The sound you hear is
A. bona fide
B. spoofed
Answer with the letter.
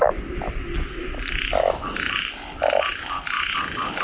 A